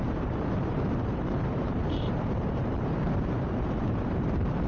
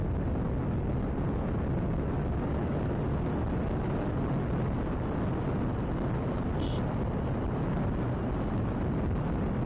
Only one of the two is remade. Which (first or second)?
first